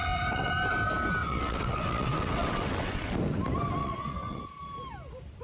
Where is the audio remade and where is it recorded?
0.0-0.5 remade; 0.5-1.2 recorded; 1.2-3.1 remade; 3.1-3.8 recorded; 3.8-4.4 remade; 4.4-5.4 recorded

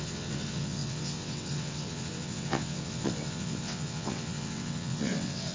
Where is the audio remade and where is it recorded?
0.0-5.5 remade